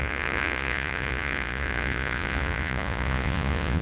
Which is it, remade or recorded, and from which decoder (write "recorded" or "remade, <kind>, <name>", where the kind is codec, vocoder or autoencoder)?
remade, vocoder, Vocos